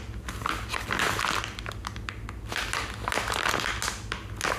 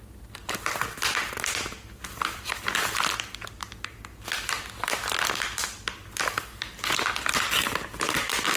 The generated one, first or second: second